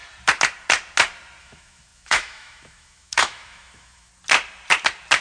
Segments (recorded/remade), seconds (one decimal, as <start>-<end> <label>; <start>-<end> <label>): 0.0-1.4 recorded; 1.4-4.1 remade; 4.1-5.2 recorded